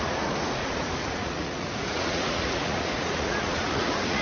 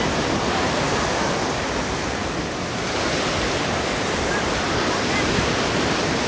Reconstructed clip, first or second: first